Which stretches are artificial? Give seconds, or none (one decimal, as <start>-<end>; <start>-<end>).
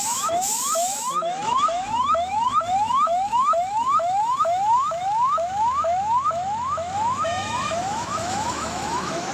0.0-9.3